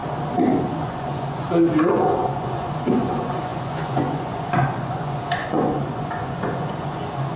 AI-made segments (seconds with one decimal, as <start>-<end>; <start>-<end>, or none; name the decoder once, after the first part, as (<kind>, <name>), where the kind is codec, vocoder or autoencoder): 0.6-7.4 (vocoder, Vocos)